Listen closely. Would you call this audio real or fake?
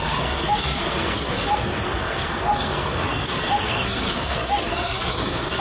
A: fake